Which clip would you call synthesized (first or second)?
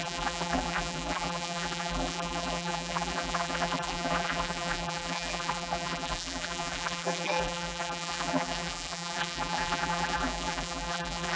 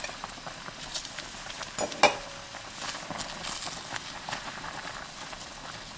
first